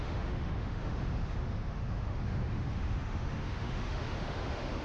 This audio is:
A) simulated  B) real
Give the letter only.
A